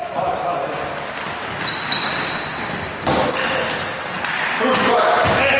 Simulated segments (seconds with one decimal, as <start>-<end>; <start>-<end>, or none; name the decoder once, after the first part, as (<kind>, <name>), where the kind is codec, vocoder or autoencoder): none